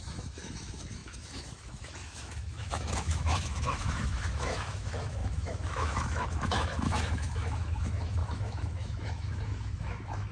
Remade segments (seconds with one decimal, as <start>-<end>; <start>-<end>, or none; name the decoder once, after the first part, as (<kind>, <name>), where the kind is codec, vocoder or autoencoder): 0.0-10.3 (autoencoder, DAC-VAE)